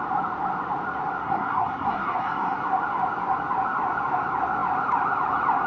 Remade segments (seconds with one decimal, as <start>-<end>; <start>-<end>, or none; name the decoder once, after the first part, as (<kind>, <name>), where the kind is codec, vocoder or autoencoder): 1.2-2.6 (codec, SNAC)

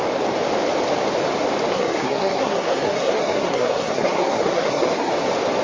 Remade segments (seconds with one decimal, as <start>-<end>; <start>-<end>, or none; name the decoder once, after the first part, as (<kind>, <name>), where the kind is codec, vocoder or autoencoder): 1.7-5.1 (codec, SNAC)

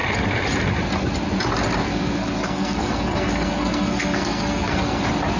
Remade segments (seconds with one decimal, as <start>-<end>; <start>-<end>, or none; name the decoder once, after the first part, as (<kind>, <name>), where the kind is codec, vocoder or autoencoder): 1.8-5.0 (codec, SNAC)

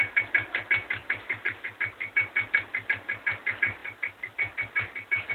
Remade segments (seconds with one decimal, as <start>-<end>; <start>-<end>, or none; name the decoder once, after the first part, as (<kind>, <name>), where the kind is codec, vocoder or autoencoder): none

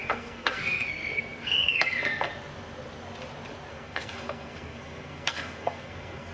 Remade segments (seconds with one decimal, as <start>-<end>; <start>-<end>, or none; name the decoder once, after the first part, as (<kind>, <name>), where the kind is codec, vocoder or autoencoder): 0.0-2.3 (codec, SNAC); 3.7-6.3

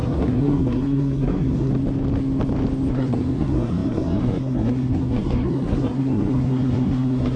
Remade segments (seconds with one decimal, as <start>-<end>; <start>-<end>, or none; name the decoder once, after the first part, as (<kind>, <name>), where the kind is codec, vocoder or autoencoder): 0.0-1.7 (codec, SNAC); 2.9-7.4